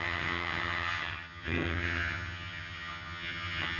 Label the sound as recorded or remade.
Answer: remade